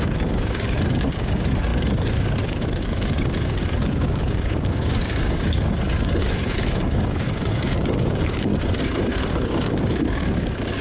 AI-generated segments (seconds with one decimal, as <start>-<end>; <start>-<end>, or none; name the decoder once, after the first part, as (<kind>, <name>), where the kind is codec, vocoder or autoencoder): 0.0-8.5 (codec, DAC); 9.1-10.8